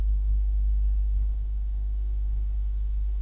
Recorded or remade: remade